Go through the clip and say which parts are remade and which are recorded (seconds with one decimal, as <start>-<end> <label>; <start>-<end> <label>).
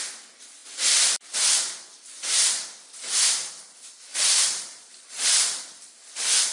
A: 0.0-4.1 recorded; 4.1-5.9 remade; 5.9-6.5 recorded